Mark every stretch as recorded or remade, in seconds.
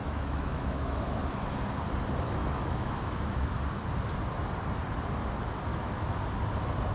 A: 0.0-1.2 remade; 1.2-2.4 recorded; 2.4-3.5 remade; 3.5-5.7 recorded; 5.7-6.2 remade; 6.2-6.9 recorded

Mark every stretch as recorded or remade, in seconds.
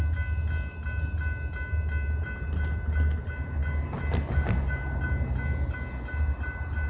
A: 0.0-6.9 recorded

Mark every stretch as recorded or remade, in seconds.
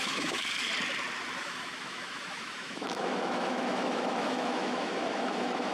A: 0.0-0.7 remade; 0.7-1.4 recorded; 1.4-5.7 remade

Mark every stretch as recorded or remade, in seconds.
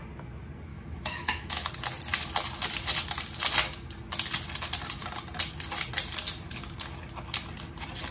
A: 0.0-0.7 recorded; 0.7-1.7 remade; 1.7-8.1 recorded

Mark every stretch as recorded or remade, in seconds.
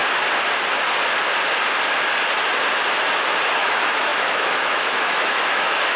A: 0.0-3.6 recorded; 3.6-6.0 remade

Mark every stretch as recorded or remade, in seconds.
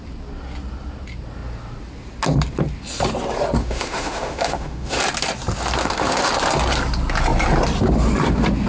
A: 0.0-3.6 recorded; 3.6-5.0 remade; 5.0-5.8 recorded; 5.8-6.3 remade; 6.3-8.7 recorded